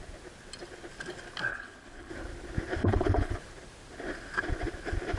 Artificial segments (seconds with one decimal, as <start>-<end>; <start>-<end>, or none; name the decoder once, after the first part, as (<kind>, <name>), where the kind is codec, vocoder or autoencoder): 1.5-2.1 (codec, HILCodec); 2.8-3.4